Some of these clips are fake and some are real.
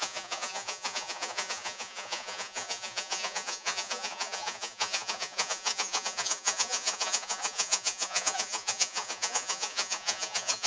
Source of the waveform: fake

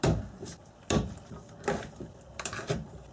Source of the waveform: real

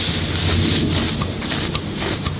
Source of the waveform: real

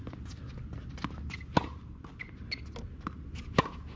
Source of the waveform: real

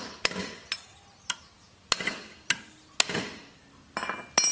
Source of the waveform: real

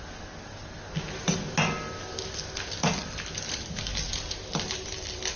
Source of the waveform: real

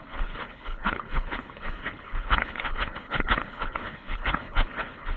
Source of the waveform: fake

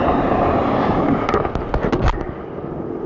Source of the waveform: real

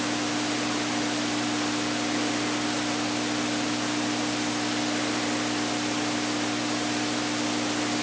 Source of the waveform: real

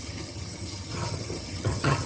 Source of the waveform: fake